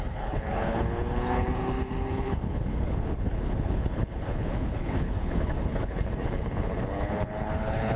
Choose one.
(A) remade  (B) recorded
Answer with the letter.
A